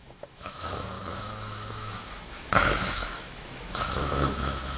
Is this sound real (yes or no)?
no